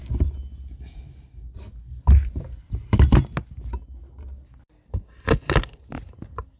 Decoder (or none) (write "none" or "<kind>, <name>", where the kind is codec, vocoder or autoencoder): none